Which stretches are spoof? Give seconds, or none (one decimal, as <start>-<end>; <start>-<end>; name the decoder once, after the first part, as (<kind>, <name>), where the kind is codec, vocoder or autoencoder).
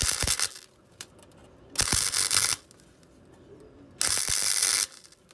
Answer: none